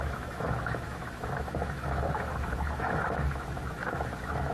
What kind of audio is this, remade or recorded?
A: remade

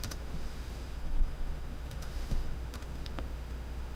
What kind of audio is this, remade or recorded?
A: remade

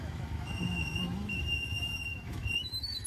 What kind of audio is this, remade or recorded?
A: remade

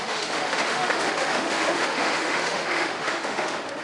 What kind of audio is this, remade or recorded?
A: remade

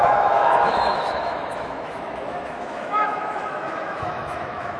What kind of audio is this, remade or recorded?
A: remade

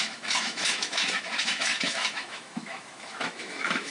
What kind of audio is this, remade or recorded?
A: remade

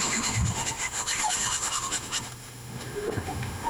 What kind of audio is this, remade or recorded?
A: remade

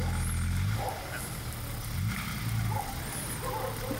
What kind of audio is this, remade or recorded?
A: recorded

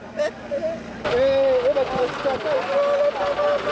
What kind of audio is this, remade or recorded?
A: recorded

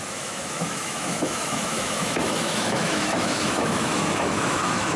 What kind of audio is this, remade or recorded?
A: remade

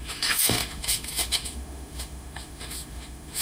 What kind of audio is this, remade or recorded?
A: remade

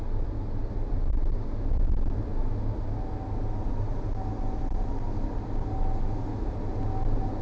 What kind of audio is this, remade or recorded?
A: recorded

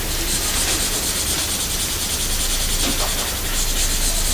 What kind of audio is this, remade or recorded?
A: recorded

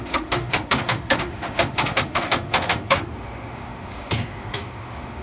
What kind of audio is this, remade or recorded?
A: remade